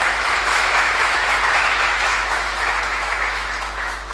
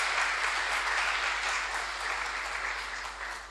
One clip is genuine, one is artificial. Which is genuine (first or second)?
second